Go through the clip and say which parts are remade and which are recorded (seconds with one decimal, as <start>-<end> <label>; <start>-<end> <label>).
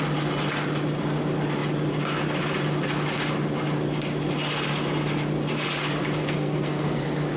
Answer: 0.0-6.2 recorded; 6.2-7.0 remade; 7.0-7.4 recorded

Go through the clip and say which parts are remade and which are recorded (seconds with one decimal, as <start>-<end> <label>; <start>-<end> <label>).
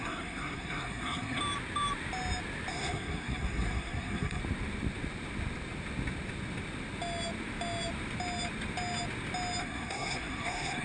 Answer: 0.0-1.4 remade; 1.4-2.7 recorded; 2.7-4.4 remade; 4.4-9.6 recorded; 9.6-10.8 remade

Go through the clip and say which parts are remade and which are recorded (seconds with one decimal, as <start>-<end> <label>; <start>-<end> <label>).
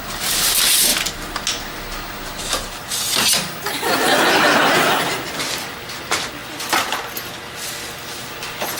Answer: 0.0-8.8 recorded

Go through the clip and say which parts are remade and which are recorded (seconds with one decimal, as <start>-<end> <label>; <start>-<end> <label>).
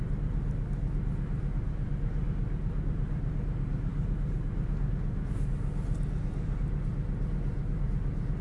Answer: 0.0-8.4 recorded